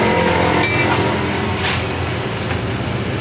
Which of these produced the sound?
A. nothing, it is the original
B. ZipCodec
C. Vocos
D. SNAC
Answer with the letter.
A